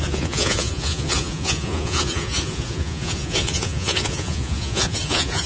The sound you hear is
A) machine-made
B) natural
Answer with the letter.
A